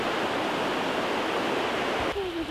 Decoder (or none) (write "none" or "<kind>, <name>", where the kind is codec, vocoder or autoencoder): none